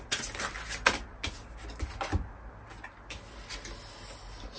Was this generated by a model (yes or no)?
no